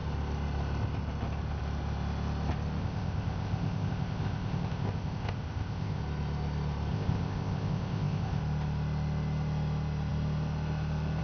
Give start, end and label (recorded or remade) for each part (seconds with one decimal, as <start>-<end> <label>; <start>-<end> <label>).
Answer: 0.0-2.8 recorded; 2.8-6.0 remade; 6.0-6.9 recorded; 6.9-8.4 remade; 8.4-11.2 recorded